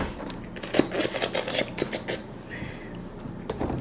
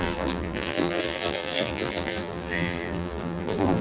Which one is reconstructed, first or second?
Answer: second